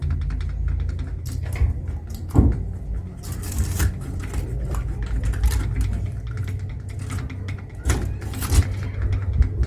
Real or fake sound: real